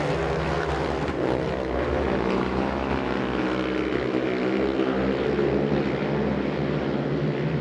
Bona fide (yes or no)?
yes